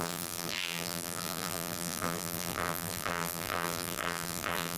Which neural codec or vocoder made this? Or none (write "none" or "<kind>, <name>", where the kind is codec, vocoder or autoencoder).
vocoder, BigVGAN v2